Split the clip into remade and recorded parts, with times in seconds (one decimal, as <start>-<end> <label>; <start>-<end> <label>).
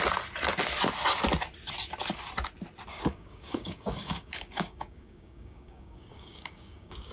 0.0-2.9 recorded; 2.9-7.1 remade